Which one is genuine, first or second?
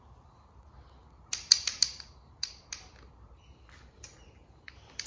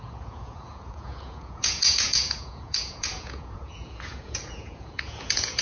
first